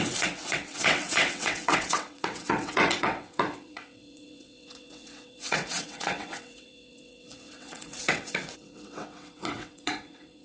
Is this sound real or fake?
fake